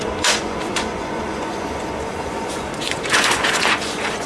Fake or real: fake